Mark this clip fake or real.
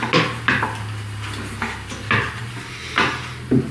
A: real